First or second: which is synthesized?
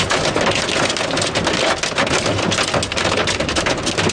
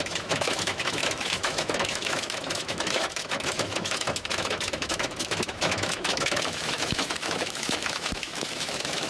second